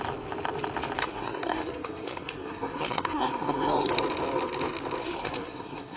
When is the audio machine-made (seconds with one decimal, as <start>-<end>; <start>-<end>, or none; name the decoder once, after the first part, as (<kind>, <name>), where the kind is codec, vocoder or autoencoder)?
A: 1.0-3.9 (codec, SNAC); 5.0-6.0